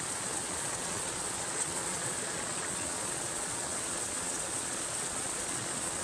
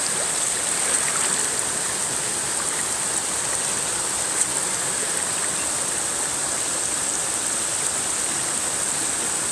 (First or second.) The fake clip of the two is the first